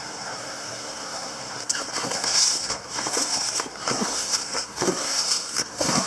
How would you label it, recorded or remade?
remade